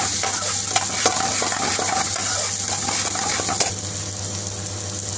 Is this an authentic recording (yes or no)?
yes